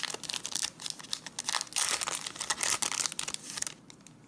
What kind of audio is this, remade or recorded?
recorded